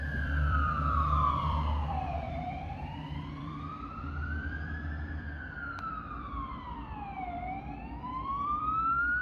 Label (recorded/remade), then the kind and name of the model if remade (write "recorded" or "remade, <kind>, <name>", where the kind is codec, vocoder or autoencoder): remade, vocoder, BigVGAN v2